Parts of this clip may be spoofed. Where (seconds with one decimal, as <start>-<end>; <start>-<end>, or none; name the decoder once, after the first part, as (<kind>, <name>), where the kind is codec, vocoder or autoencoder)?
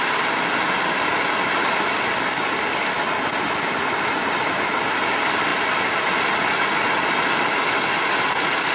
none